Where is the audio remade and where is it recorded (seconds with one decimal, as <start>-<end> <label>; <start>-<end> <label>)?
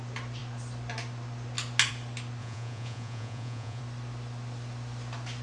0.0-2.4 recorded; 2.4-3.8 remade; 3.8-5.4 recorded